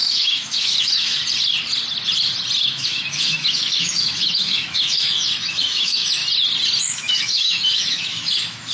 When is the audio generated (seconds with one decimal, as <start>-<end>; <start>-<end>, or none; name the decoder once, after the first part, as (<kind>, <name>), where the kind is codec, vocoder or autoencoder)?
0.0-1.2 (autoencoder, DAC-VAE); 2.6-6.2; 6.8-8.7